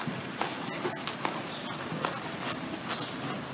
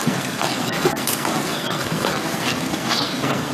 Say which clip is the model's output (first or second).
second